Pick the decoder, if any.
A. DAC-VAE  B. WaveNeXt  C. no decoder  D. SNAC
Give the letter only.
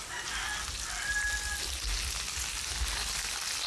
C